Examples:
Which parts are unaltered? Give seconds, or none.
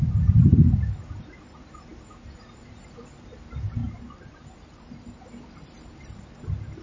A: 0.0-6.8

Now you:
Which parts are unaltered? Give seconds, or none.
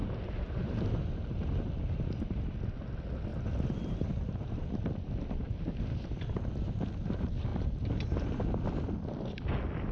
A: 1.0-3.3; 4.7-7.5; 8.5-9.9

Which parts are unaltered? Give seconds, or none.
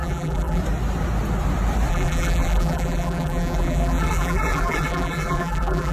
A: 0.6-1.9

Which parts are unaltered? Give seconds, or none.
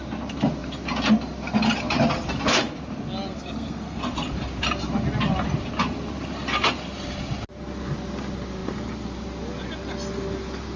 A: 0.0-3.3; 4.0-10.8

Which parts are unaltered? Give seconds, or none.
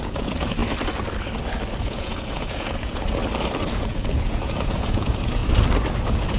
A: 0.6-1.8; 3.2-3.7; 5.4-6.0